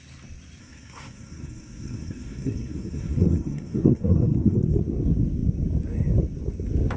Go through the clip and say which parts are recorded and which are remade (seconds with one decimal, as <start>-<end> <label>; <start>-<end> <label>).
0.0-0.6 recorded; 0.6-4.8 remade; 4.8-7.0 recorded